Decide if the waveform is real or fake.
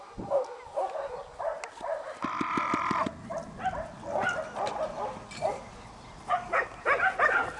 real